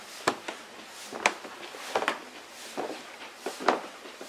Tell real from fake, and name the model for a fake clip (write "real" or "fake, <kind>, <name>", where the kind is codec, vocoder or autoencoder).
fake, vocoder, BigVGAN v2